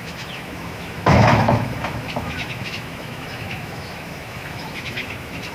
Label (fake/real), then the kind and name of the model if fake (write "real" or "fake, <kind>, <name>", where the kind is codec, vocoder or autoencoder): fake, autoencoder, DAC-VAE